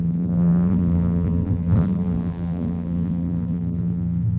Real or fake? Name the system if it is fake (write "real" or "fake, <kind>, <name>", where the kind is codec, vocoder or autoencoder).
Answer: fake, vocoder, BigVGAN v2